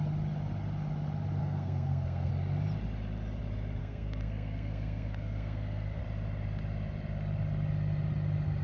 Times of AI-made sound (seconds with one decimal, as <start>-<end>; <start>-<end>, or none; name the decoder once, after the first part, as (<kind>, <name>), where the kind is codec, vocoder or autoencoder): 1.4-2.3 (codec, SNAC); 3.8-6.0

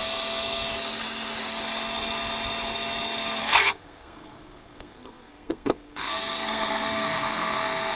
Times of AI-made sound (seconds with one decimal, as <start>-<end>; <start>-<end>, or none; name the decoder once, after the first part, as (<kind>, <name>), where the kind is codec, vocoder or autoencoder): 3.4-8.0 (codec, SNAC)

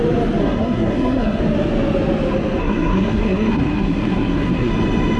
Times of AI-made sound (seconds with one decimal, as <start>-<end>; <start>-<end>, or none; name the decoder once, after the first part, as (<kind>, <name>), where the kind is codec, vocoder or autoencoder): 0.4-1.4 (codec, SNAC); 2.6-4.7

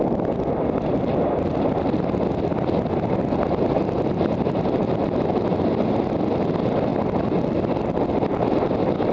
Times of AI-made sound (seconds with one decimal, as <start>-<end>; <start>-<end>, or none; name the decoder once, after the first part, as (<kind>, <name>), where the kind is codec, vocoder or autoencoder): none

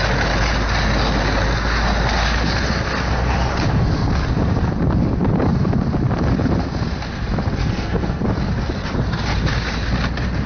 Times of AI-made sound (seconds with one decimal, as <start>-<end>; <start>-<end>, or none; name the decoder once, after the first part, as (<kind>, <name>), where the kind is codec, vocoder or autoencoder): 7.6-8.2 (codec, SNAC)

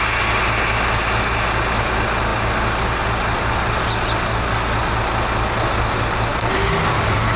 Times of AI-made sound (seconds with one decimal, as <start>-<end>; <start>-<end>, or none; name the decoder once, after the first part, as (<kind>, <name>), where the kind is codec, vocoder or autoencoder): none